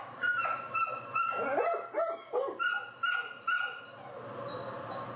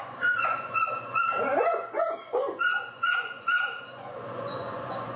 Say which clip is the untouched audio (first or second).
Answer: first